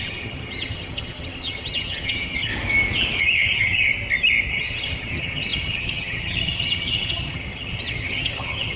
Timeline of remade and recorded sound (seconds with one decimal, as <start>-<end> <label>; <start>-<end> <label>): 0.0-2.5 remade; 2.5-3.2 recorded; 3.2-3.9 remade; 3.9-4.5 recorded; 4.5-8.8 remade